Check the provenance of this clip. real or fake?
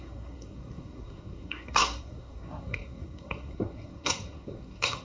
fake